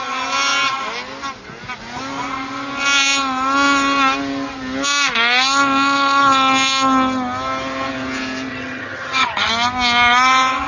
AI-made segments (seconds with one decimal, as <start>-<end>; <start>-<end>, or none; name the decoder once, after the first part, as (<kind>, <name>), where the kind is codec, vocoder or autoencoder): 8.5-9.5 (vocoder, HiFi-GAN)